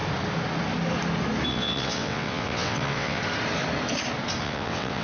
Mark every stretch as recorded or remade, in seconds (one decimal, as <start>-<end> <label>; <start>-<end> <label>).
0.0-1.5 recorded; 1.5-3.2 remade; 3.2-4.4 recorded; 4.4-5.0 remade